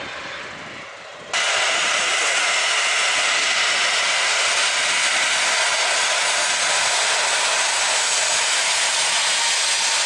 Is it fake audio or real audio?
real